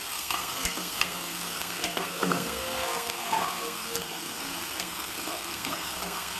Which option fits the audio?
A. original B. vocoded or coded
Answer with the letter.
B